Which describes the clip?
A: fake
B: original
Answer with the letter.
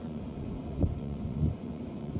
A